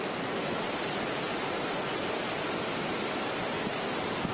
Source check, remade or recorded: recorded